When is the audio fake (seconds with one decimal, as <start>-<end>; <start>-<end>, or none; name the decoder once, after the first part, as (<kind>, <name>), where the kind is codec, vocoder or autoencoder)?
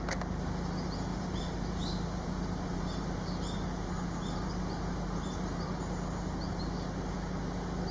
1.1-5.8 (vocoder, BigVGAN v2)